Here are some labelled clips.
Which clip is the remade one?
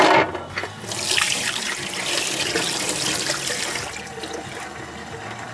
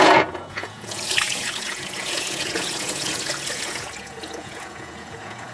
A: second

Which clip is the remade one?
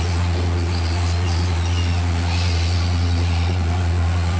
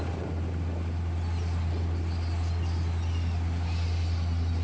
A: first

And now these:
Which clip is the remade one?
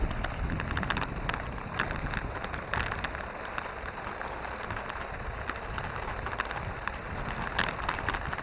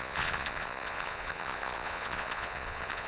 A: second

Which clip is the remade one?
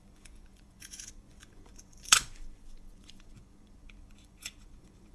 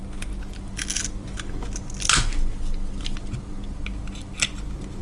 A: first